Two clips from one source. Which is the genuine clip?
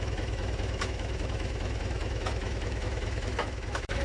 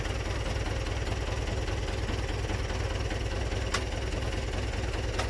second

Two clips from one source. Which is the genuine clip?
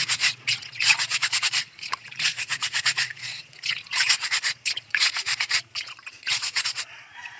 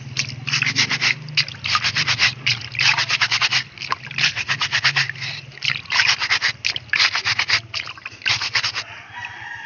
second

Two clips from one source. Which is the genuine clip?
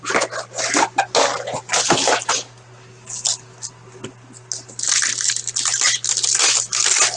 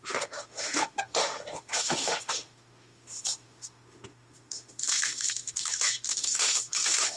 first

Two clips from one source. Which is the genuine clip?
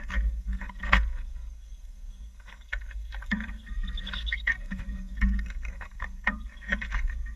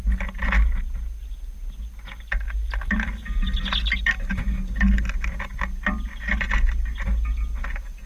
second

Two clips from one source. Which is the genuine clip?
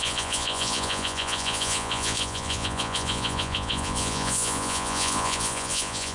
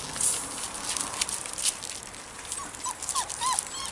second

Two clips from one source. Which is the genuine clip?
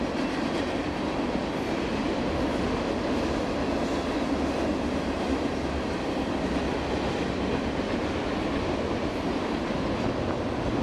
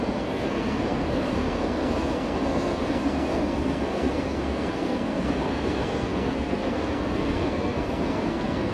first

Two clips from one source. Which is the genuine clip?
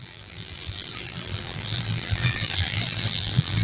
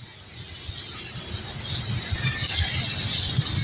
second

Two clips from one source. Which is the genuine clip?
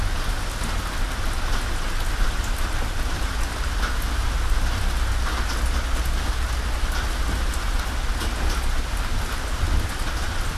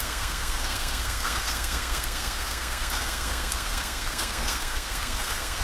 first